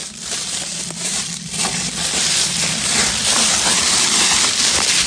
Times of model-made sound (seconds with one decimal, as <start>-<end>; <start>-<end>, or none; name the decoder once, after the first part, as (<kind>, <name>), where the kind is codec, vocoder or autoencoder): none